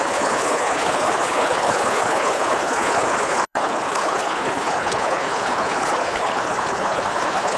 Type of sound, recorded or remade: remade